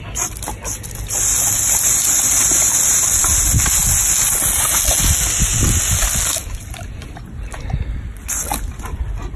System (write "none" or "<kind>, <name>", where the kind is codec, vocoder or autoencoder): none